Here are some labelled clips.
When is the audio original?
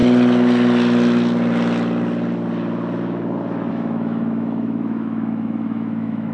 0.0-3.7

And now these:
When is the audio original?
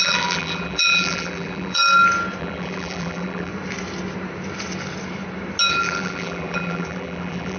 1.8-2.4; 3.5-5.7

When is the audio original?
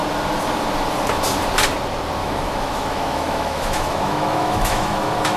0.0-2.2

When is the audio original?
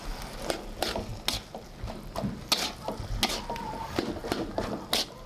0.0-5.3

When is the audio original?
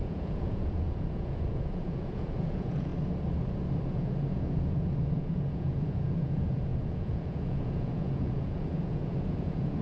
2.9-3.9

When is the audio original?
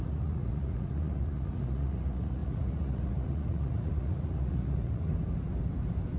5.1-6.2